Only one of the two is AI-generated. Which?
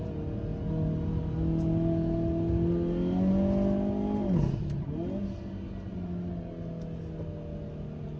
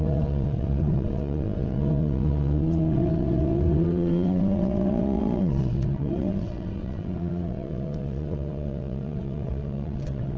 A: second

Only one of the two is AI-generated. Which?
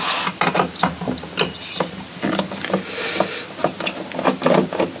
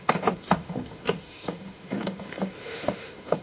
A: second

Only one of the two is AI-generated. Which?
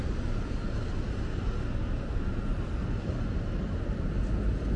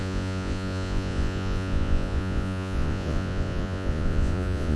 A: second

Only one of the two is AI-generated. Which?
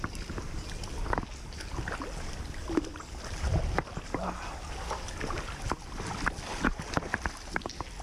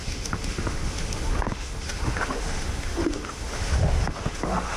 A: second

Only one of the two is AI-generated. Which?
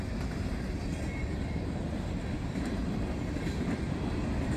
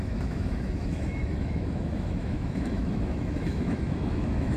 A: second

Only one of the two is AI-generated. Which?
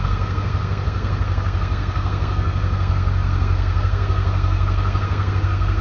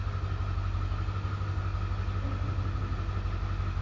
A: first